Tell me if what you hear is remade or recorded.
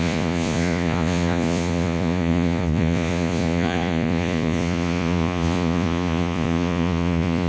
remade